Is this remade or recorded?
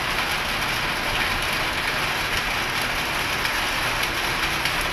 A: recorded